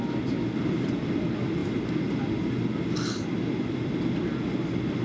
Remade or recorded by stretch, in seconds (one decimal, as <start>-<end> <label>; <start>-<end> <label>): 0.0-5.0 recorded